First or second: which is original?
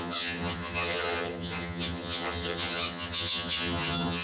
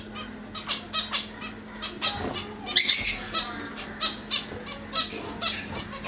second